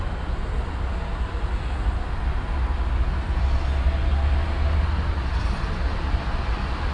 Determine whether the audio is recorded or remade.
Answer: recorded